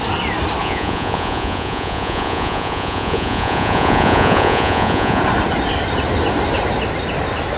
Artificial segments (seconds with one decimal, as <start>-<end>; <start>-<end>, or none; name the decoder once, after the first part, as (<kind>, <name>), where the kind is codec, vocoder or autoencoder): 0.6-5.2 (vocoder, Vocos)